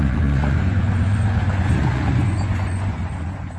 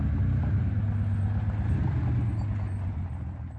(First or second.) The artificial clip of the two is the first